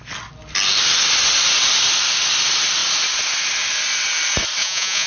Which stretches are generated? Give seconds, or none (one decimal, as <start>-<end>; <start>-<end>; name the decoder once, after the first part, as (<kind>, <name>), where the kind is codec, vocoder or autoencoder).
4.6-5.1 (vocoder, Vocos)